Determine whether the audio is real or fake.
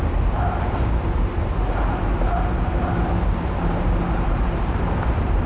fake